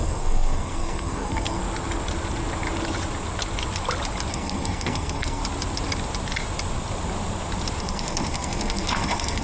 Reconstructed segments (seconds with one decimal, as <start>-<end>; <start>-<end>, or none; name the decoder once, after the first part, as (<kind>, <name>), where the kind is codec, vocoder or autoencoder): 0.0-1.6 (codec, SNAC); 4.3-5.4; 7.8-9.4